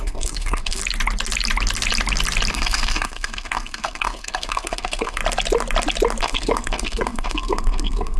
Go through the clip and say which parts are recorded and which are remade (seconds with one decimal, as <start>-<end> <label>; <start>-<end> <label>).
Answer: 0.0-0.8 remade; 0.8-2.5 recorded; 2.5-5.2 remade; 5.2-6.2 recorded; 6.2-8.2 remade